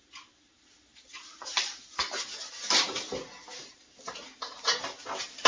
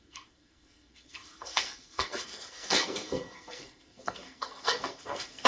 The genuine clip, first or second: first